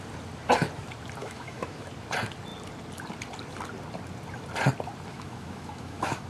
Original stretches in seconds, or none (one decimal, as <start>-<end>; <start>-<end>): 0.0-1.2; 1.9-5.1